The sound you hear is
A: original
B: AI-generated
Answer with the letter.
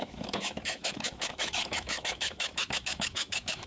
B